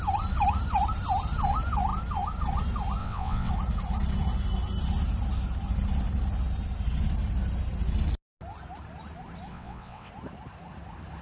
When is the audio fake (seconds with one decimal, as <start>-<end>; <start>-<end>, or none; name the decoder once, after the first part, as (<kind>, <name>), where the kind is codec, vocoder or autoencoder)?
3.0-3.5 (vocoder, WaveNeXt); 9.5-10.1